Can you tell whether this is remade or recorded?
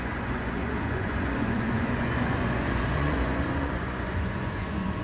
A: remade